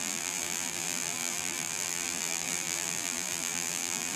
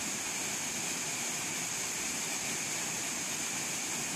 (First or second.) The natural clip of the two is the second